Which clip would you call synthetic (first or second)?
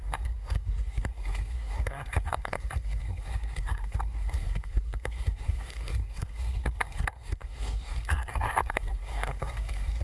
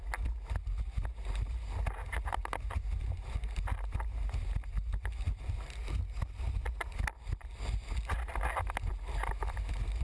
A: first